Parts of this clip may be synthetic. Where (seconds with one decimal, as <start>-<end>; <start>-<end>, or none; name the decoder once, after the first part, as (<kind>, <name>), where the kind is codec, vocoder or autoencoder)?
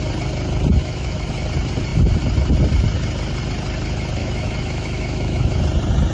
0.8-1.3 (autoencoder, DAC-VAE); 4.2-5.6